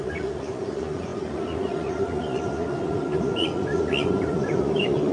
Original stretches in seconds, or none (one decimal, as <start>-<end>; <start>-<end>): none